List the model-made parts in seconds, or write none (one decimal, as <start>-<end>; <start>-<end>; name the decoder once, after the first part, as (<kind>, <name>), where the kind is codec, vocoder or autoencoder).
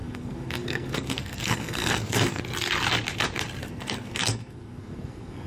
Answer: 0.0-2.4 (codec, SNAC); 3.6-5.5